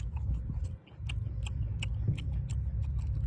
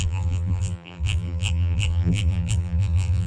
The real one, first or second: first